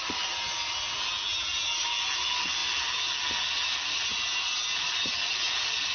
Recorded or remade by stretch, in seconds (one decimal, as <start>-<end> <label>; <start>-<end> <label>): 0.0-5.9 recorded